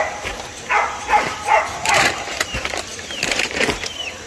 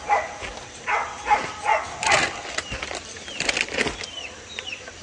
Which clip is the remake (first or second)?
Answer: first